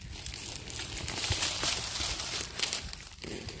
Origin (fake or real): real